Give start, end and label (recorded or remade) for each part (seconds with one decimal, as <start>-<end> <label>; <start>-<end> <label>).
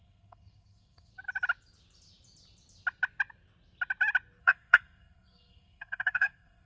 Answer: 0.0-1.1 remade; 1.1-4.4 recorded; 4.4-6.7 remade